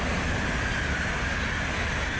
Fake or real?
real